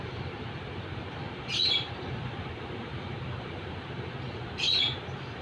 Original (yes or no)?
no